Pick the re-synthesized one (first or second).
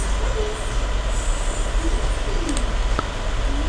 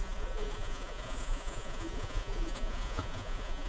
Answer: second